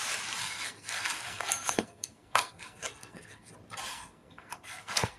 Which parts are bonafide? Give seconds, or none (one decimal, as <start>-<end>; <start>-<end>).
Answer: 0.0-0.4; 3.5-3.9

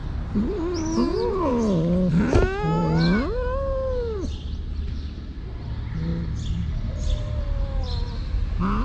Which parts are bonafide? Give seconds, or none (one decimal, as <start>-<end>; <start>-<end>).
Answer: 0.0-8.8

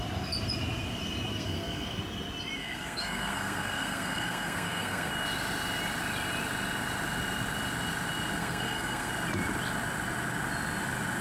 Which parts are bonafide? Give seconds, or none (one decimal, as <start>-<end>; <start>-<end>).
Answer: 0.0-1.3; 2.0-2.6; 5.1-8.4; 9.1-11.2

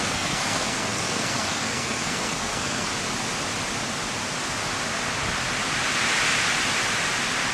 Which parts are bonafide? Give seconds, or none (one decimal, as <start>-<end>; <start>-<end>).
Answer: 2.9-7.5

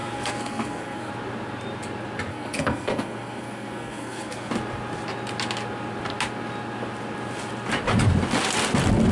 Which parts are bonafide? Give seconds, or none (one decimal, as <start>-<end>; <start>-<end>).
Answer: 1.1-2.3; 4.5-9.1

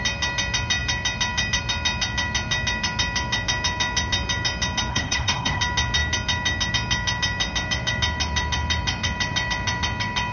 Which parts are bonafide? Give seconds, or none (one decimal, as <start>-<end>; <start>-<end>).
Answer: 0.0-4.9; 5.6-10.3

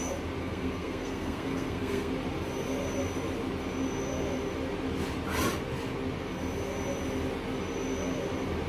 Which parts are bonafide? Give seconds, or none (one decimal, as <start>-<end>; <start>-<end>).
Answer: 0.0-0.4; 2.1-8.7